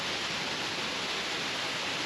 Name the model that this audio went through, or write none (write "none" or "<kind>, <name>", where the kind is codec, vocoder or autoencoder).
none